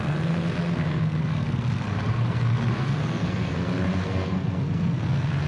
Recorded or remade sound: remade